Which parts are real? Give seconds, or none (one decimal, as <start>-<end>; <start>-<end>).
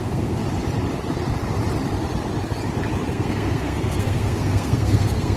0.4-3.1